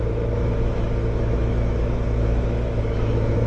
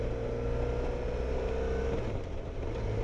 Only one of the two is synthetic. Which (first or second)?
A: first